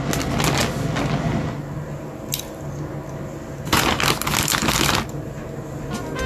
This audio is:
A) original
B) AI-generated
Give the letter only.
A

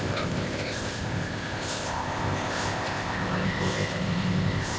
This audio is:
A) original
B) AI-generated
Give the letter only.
B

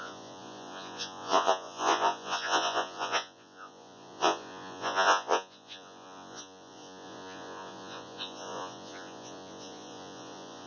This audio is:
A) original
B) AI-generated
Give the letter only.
B